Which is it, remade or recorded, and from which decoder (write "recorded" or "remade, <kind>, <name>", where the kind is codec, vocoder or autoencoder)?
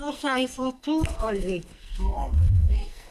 remade, codec, SNAC